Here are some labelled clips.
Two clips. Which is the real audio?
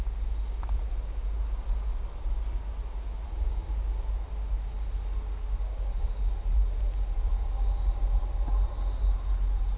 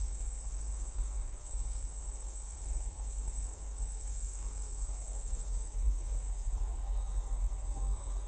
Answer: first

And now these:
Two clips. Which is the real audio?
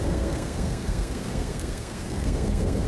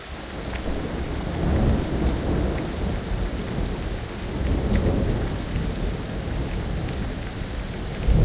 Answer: second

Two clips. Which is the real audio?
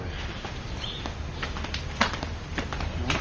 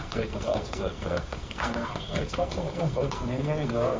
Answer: first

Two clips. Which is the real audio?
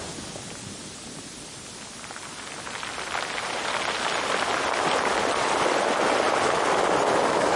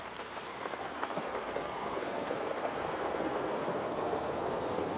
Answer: first